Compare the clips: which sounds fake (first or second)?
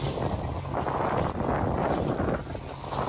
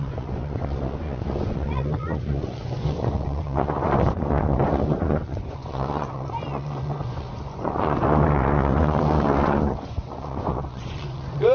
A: second